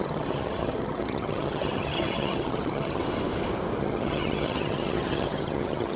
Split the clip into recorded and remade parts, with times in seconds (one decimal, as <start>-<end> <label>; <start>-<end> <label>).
0.0-3.0 remade; 3.0-3.8 recorded; 3.8-6.0 remade